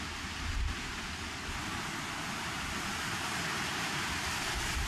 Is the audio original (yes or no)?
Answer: yes